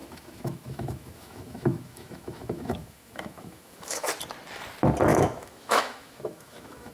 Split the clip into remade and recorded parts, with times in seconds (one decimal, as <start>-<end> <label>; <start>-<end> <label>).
0.0-4.1 remade; 4.1-5.1 recorded; 5.1-6.9 remade